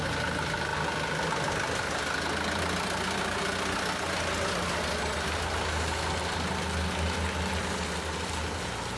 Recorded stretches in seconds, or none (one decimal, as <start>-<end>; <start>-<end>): 0.0-9.0